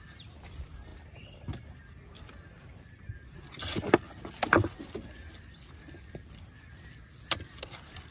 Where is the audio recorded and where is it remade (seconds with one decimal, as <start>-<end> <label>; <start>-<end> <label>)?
0.0-8.1 recorded